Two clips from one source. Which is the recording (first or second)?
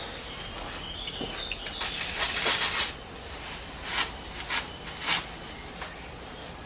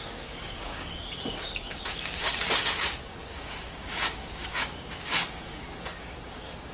first